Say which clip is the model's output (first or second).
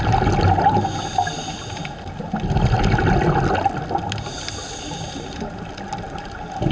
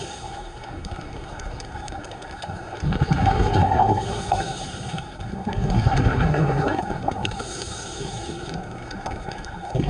second